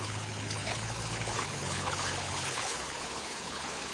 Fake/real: fake